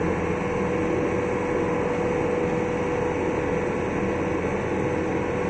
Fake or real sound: real